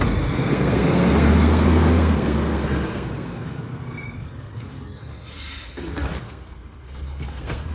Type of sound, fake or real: fake